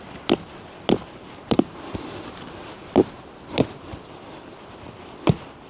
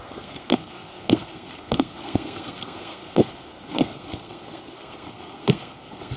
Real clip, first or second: first